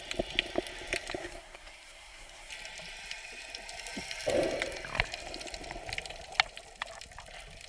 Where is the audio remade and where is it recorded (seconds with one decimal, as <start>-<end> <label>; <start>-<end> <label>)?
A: 0.0-1.2 recorded; 1.2-2.5 remade; 2.5-7.7 recorded